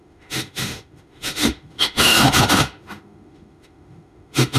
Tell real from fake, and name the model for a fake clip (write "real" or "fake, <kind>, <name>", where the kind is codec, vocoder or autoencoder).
fake, autoencoder, DAC-VAE